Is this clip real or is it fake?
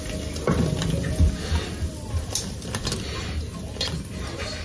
real